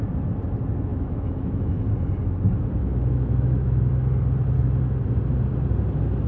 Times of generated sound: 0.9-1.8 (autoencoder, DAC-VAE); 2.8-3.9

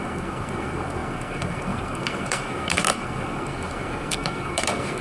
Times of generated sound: 0.0-5.0 (codec, SNAC)

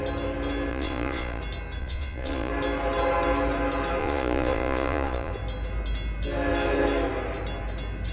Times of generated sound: 0.7-1.4 (vocoder, Vocos); 1.8-2.5; 4.0-5.3

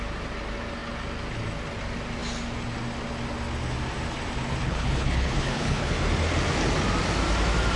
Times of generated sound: 4.6-5.9 (codec, HILCodec)

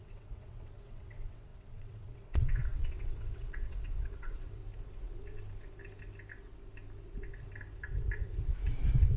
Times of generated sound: 0.0-4.6 (vocoder, WaveNeXt)

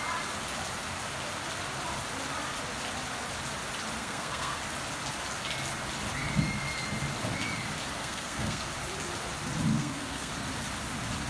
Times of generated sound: 4.0-4.6 (codec, SNAC); 8.0-8.7; 9.7-10.3

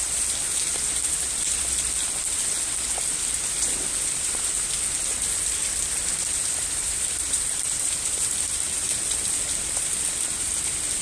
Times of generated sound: 5.6-10.3 (vocoder, BigVGAN v2)